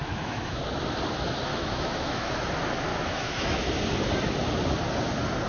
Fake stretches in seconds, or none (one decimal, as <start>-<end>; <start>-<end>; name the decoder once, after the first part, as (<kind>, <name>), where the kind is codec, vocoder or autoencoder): 0.0-0.6 (autoencoder, DAC-VAE); 1.5-2.5; 2.9-3.8